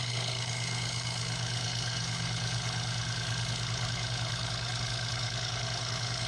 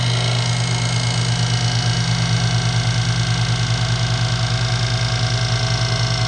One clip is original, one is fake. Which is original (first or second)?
second